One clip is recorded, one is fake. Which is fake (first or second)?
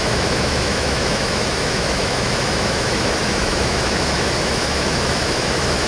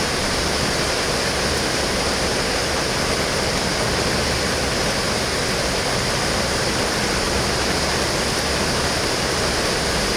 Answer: first